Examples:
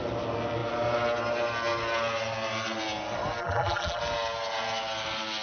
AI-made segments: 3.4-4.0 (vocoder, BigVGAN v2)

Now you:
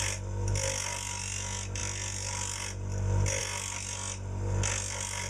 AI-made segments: none

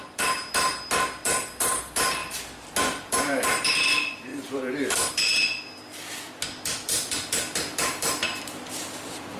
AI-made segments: 0.0-9.4 (vocoder, BigVGAN v2)

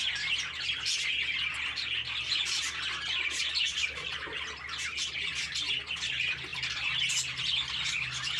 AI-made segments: 3.4-4.7 (vocoder, BigVGAN v2)

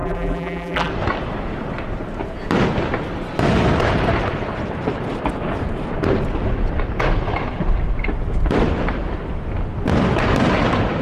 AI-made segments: 0.0-0.9 (vocoder, BigVGAN v2)